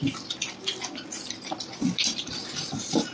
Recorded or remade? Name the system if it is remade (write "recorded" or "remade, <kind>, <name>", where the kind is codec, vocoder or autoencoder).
recorded